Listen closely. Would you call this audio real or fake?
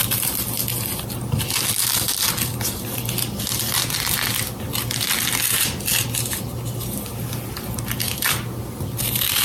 real